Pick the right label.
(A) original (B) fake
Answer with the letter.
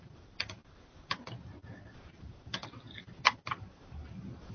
B